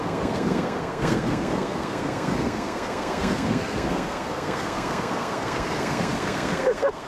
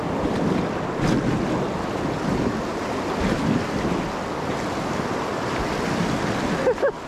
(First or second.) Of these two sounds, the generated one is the first